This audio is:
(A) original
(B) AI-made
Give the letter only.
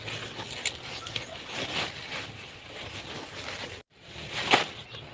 A